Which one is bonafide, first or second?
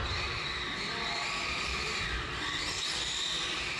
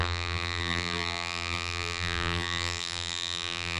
first